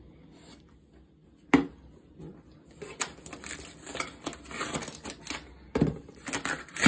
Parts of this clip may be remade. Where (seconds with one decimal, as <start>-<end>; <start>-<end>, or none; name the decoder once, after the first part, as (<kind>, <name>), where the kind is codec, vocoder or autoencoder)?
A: none